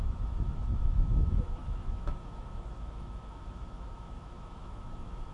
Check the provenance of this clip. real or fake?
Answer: fake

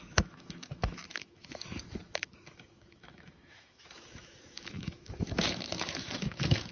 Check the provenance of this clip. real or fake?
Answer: fake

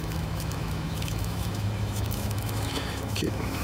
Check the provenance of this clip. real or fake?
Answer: fake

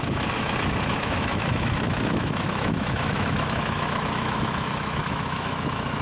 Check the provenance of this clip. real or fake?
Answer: fake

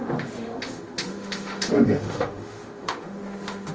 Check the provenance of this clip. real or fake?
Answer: fake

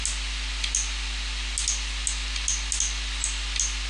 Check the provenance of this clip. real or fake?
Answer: real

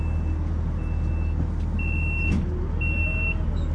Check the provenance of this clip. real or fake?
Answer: real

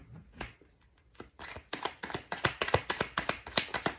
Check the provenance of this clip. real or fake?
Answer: real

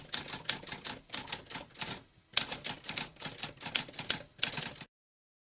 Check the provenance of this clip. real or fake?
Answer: real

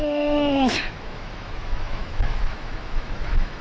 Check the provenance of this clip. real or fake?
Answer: fake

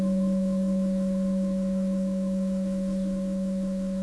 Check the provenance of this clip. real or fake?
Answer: fake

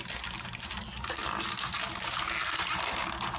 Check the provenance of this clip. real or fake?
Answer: real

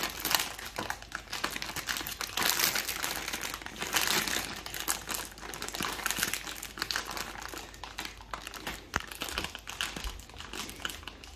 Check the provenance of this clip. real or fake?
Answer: real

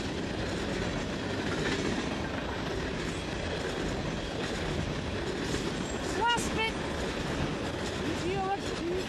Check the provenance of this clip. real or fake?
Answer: real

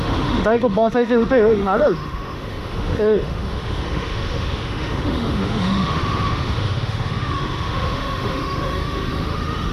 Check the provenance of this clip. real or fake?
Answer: fake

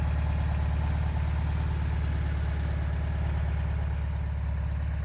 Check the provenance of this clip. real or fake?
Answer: real